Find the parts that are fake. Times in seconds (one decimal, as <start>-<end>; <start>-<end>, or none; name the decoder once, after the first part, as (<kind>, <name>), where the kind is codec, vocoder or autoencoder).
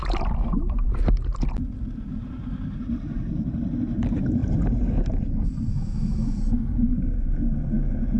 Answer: 5.7-6.4 (autoencoder, DAC-VAE)